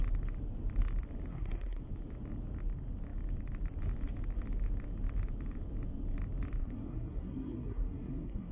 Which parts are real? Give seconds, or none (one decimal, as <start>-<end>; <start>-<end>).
0.0-1.3; 1.8-6.6

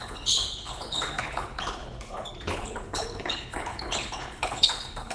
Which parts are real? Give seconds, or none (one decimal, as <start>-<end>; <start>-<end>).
none

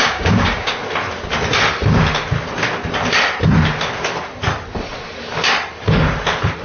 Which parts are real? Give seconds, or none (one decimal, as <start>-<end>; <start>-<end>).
0.7-6.6